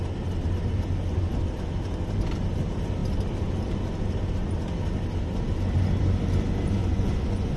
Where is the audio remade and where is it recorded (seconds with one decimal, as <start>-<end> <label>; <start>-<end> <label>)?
0.0-6.8 recorded; 6.8-7.6 remade